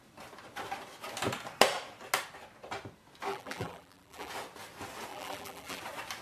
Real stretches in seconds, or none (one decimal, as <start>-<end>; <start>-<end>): 0.0-3.3; 4.3-5.1; 5.8-6.2